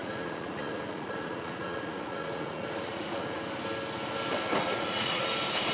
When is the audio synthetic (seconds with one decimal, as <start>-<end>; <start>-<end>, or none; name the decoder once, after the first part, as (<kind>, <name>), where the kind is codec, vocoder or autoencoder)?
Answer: 0.0-3.4 (vocoder, Vocos); 4.6-5.2

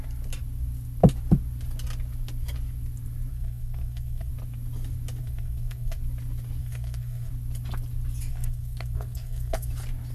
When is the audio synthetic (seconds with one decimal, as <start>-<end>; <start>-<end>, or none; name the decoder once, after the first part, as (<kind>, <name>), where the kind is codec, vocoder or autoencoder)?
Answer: 3.3-4.3 (codec, SNAC); 5.2-6.0; 6.6-7.3; 8.3-9.7

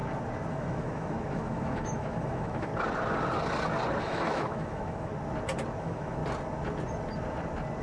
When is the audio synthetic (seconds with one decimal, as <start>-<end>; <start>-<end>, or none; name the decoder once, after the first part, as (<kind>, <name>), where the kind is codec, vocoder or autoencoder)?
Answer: 0.5-2.7 (autoencoder, DAC-VAE); 4.0-5.1; 5.8-6.2

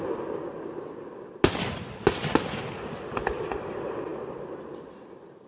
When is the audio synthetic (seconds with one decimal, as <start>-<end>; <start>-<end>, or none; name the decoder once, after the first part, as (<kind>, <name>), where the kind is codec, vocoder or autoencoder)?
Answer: none

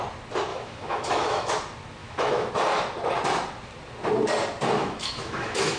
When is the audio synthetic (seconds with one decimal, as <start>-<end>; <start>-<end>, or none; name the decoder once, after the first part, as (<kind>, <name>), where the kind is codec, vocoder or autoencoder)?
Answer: 0.5-1.5 (autoencoder, DAC-VAE); 2.0-2.5; 4.8-5.8